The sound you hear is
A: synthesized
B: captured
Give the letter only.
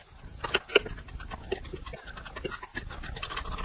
B